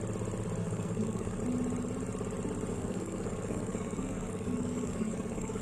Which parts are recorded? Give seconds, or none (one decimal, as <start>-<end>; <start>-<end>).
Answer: 0.0-0.6; 1.4-2.7